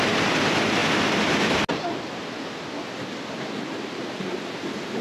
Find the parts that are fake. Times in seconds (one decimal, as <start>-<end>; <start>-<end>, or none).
none